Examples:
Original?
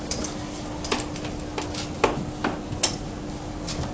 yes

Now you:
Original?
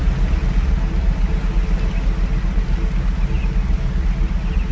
yes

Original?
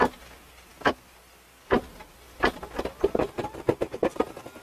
yes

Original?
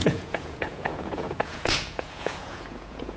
no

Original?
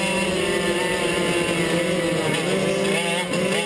yes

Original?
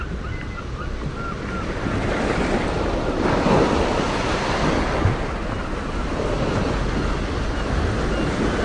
yes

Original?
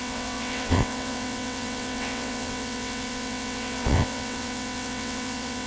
no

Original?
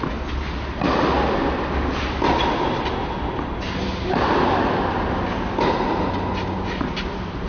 yes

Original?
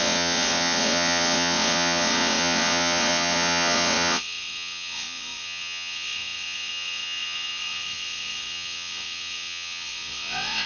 no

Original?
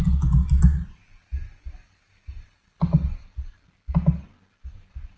yes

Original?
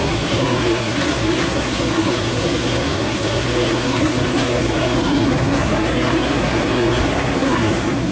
no